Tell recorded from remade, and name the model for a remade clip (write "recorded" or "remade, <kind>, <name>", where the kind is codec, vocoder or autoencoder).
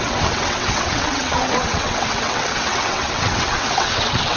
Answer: remade, vocoder, WaveNeXt